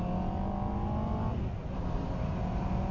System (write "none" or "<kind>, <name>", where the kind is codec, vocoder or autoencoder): none